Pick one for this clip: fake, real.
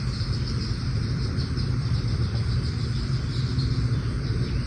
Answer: fake